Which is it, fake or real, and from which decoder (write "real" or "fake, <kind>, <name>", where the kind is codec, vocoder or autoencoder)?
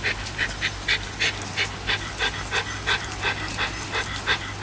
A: real